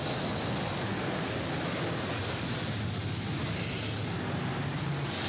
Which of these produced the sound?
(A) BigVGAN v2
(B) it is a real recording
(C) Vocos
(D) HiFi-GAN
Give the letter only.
B